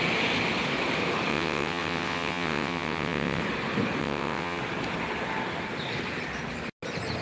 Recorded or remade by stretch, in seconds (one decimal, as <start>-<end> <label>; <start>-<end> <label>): 0.0-1.3 recorded; 1.3-3.4 remade; 3.4-4.0 recorded; 4.0-4.6 remade; 4.6-7.2 recorded